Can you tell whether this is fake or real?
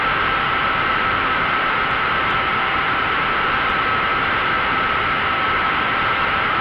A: fake